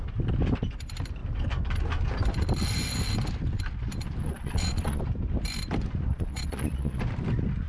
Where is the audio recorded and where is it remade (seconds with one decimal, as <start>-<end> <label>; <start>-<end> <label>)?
0.0-4.2 recorded; 4.2-5.0 remade; 5.0-6.1 recorded; 6.1-7.0 remade; 7.0-7.7 recorded